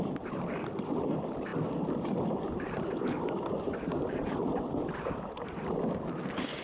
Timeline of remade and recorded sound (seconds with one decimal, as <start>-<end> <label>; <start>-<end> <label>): 0.0-6.6 recorded